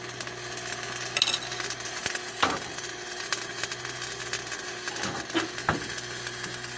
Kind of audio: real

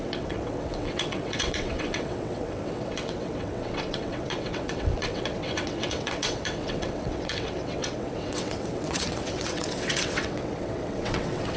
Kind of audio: fake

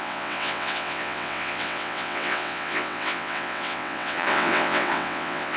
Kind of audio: fake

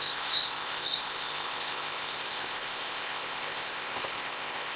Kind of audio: fake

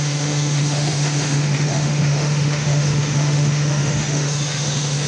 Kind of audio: fake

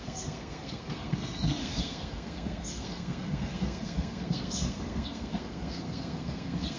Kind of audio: fake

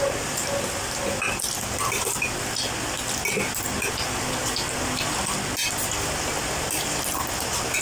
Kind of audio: real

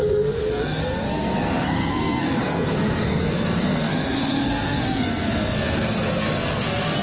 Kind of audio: fake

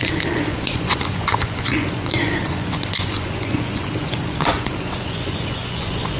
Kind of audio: fake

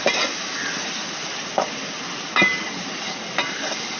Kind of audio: real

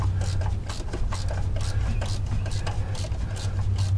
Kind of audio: real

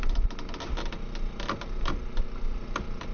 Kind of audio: real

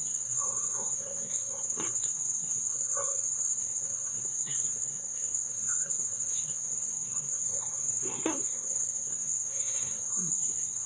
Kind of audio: fake